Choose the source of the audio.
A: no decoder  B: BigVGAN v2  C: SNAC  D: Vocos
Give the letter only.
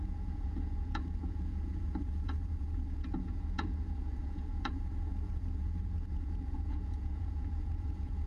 D